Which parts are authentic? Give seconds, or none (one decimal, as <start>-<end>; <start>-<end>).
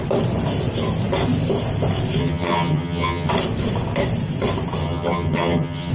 0.0-2.2; 3.3-4.8